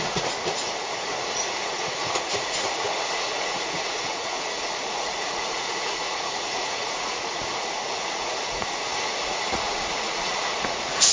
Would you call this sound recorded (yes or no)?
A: no